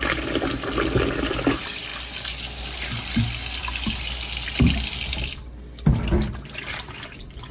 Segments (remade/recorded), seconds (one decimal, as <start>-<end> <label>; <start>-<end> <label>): 0.0-7.5 recorded

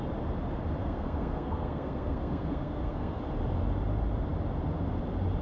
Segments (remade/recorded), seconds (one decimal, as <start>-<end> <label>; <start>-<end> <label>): 0.0-0.8 recorded; 0.8-3.2 remade; 3.2-5.4 recorded

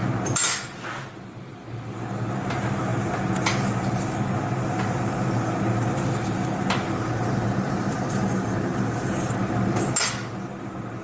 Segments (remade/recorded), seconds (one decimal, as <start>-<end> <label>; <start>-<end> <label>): 0.0-11.0 recorded

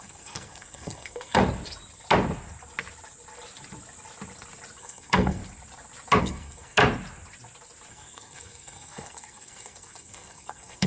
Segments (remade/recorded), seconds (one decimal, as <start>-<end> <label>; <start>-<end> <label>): 0.0-1.4 remade; 1.4-4.8 recorded; 4.8-5.4 remade; 5.4-6.2 recorded; 6.2-6.8 remade; 6.8-7.9 recorded; 7.9-10.9 remade

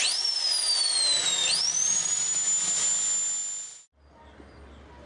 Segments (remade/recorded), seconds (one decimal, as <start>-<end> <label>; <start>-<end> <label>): 0.0-5.1 recorded

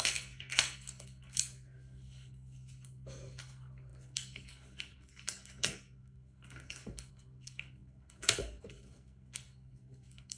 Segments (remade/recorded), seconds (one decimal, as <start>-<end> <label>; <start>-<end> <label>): 0.0-10.4 remade

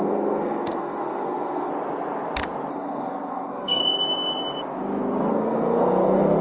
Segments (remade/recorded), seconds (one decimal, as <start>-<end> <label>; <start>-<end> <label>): 0.0-1.7 remade; 1.7-2.7 recorded; 2.7-3.8 remade; 3.8-5.3 recorded; 5.3-6.4 remade

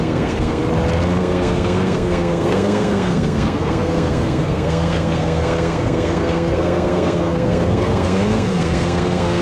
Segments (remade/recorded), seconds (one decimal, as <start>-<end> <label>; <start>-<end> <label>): 0.0-0.6 remade; 0.6-1.2 recorded; 1.2-9.4 remade